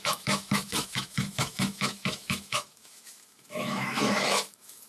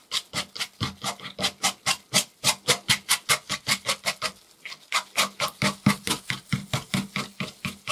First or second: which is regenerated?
first